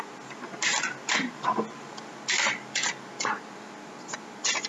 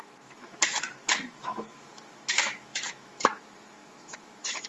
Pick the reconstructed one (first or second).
second